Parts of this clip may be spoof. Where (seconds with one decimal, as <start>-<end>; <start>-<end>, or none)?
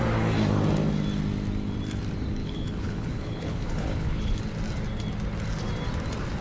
2.4-4.4